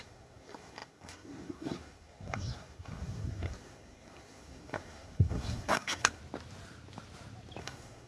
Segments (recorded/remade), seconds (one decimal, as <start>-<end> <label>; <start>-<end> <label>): 0.0-6.2 remade; 6.2-7.6 recorded; 7.6-8.1 remade